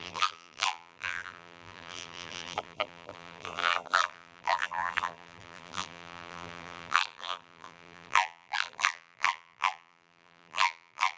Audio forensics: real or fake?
fake